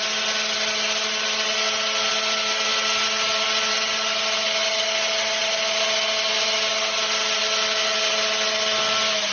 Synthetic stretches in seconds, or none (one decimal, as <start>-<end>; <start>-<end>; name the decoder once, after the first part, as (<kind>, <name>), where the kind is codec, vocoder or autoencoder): none